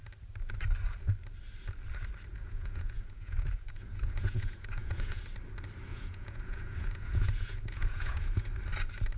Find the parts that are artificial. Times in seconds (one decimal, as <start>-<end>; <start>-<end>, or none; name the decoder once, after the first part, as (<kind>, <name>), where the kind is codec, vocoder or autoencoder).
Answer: 2.3-5.2 (vocoder, Vocos); 5.9-8.5